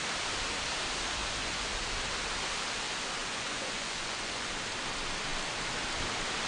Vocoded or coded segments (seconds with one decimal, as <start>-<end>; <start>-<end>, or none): 1.2-1.7; 3.2-4.5